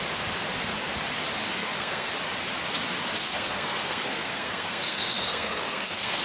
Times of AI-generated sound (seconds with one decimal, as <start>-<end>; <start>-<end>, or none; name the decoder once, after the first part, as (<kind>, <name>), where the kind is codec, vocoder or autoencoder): 1.4-2.1 (codec, SNAC); 3.2-6.2